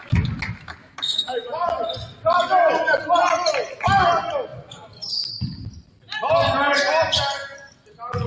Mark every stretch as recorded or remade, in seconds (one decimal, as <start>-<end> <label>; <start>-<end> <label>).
0.0-0.8 recorded; 0.8-1.6 remade; 1.6-8.3 recorded